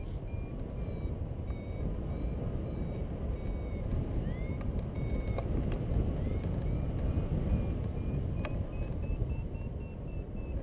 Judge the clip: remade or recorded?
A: recorded